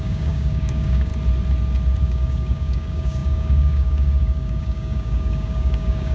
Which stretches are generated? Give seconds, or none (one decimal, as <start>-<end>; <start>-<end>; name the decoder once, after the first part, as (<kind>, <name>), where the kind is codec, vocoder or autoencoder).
0.0-1.1 (codec, DAC); 2.0-6.1